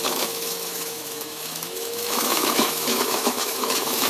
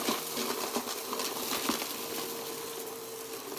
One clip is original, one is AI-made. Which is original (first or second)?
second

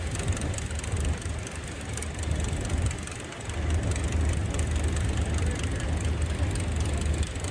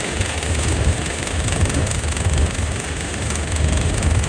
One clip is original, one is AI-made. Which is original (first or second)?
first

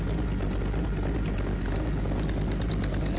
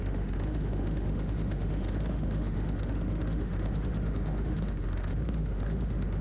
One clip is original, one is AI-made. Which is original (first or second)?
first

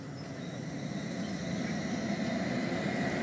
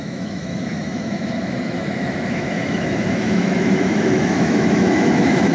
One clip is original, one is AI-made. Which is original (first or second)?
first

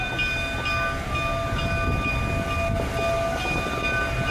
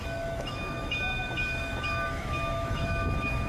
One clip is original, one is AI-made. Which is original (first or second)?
first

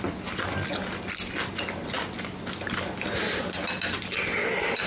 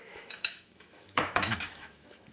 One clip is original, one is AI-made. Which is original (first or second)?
first